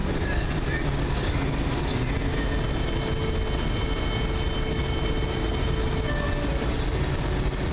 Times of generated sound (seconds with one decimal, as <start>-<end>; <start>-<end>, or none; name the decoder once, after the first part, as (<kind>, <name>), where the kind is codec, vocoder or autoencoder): none